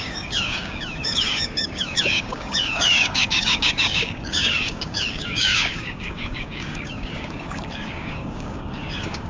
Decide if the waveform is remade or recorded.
remade